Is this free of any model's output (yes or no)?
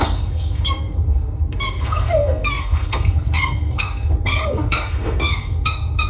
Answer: no